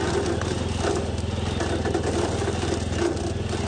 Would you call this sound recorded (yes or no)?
yes